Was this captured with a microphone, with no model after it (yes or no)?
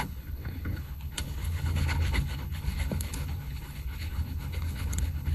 no